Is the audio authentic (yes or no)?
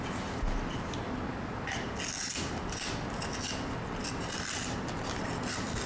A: yes